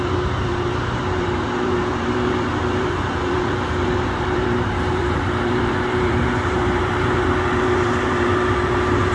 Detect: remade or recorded remade